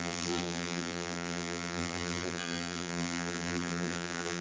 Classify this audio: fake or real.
fake